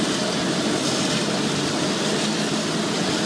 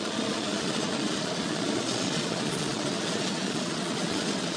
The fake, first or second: second